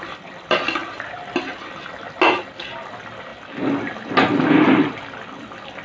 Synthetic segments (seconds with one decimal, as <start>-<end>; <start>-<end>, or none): none